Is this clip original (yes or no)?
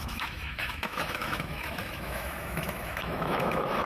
no